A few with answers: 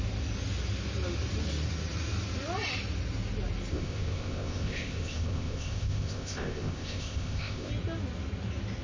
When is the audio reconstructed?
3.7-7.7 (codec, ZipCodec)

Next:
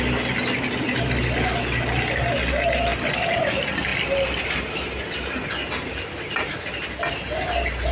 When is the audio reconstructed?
none

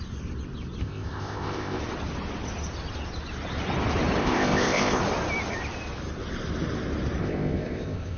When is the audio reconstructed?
0.8-1.8 (codec, ZipCodec); 4.2-5.0; 7.2-8.2